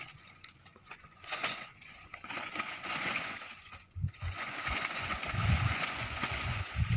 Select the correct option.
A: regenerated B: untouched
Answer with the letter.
A